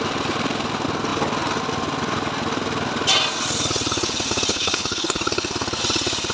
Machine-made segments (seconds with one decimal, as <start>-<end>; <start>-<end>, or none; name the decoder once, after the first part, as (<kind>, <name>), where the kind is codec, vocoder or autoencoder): 4.5-5.2 (codec, HILCodec)